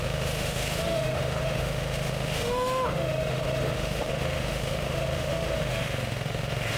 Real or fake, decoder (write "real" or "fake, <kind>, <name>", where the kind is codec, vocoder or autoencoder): fake, autoencoder, DAC-VAE